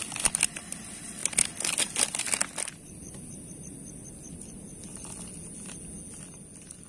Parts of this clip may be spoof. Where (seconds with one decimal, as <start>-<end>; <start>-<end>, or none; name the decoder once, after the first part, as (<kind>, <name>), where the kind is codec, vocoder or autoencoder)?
none